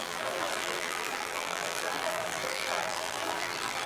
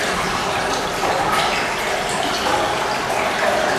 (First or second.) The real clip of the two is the second